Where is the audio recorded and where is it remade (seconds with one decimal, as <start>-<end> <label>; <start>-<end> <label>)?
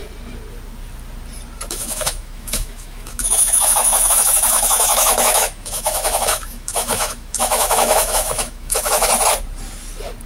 0.0-1.7 recorded; 1.7-9.1 remade; 9.1-10.3 recorded